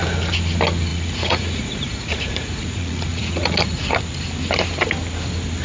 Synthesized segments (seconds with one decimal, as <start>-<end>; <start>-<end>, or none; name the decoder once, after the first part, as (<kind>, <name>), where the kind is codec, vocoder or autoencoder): 0.9-4.0 (vocoder, Vocos)